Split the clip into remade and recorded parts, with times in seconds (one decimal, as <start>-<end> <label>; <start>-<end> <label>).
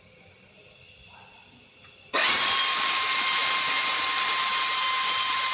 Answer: 0.0-1.4 remade; 1.4-2.6 recorded; 2.6-5.5 remade